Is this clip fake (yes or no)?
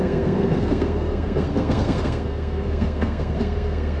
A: yes